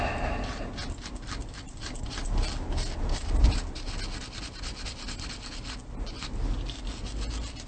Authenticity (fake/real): real